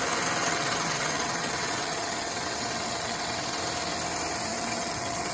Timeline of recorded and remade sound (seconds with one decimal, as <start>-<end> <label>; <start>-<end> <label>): 0.0-0.4 recorded; 0.4-3.6 remade; 3.6-4.5 recorded; 4.5-5.3 remade